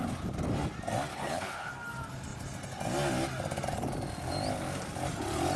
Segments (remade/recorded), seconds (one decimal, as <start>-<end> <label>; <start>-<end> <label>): 0.0-1.1 recorded; 1.1-1.7 remade; 1.7-5.6 recorded